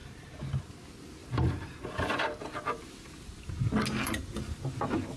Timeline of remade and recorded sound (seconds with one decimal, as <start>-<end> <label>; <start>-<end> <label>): 0.0-0.6 remade; 0.6-1.2 recorded; 1.2-3.5 remade; 3.5-5.2 recorded